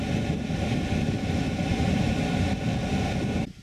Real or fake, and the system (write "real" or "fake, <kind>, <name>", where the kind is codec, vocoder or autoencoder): real